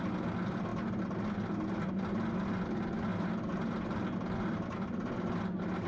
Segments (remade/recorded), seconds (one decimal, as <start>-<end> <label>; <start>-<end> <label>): 0.0-5.9 recorded